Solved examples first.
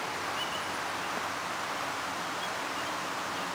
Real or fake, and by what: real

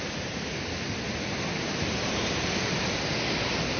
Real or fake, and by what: real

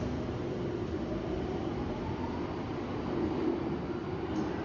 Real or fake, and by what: real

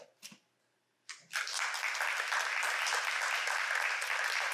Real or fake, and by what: real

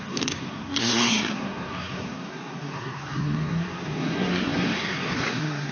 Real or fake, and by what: fake, codec, SNAC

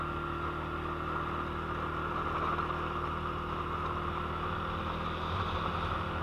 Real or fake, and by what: real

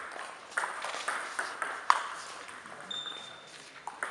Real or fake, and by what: real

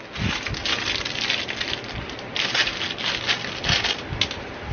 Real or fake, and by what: real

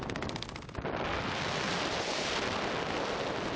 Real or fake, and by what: real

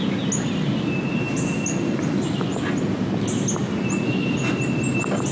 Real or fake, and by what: real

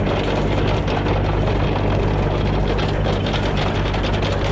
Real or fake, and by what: real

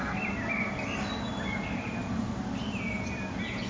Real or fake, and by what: real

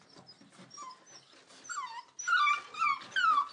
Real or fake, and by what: real